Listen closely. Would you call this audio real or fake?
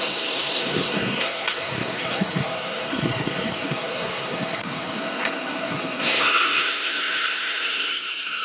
fake